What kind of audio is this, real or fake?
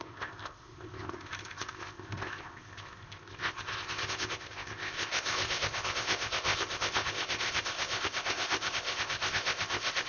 fake